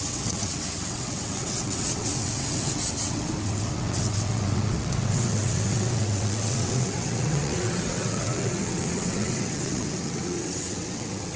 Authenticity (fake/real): fake